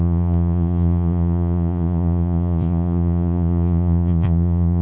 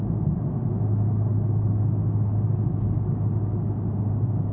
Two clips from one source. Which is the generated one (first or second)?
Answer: first